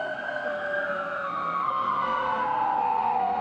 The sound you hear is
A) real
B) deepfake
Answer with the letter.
B